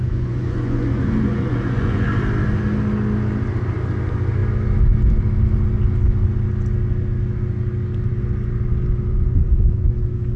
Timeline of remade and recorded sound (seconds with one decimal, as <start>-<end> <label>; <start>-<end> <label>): 0.0-2.1 remade; 2.1-9.1 recorded; 9.1-9.9 remade; 9.9-10.4 recorded